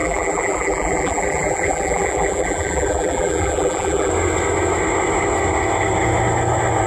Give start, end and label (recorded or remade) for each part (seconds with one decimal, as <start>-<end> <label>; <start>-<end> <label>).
0.0-4.1 remade; 4.1-6.9 recorded